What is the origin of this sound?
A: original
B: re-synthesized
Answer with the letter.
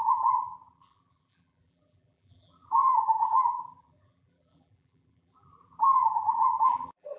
B